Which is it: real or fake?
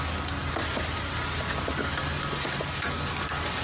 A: real